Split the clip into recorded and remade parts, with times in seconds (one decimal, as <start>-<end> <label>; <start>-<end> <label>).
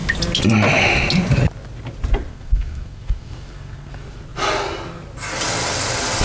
0.0-2.3 recorded; 2.3-3.9 remade; 3.9-6.2 recorded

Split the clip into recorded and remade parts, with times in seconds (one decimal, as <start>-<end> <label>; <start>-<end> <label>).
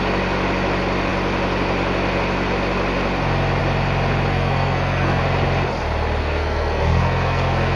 0.0-4.3 recorded; 4.3-5.2 remade; 5.2-6.2 recorded; 6.2-7.8 remade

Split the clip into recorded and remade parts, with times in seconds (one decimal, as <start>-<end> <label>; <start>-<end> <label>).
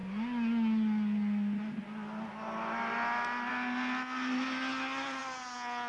0.0-5.9 recorded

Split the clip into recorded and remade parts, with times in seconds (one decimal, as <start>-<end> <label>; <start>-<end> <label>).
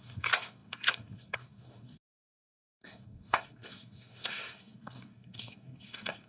0.0-6.3 remade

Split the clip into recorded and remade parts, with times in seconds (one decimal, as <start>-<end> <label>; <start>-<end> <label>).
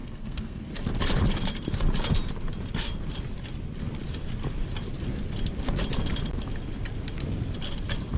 0.0-0.6 remade; 0.6-8.2 recorded